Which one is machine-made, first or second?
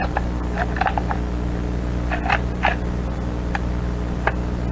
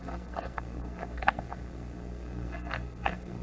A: second